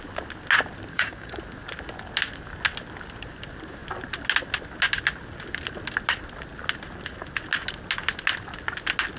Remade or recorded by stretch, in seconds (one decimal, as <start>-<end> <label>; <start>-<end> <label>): 0.0-0.9 recorded; 0.9-1.4 remade; 1.4-9.2 recorded